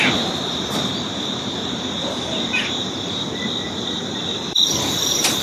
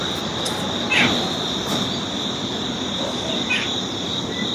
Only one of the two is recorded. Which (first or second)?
second